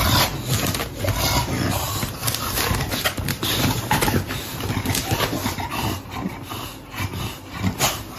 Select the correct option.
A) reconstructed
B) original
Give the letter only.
B